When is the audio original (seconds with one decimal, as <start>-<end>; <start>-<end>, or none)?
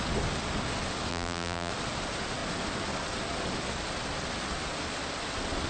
0.0-1.1; 1.7-5.7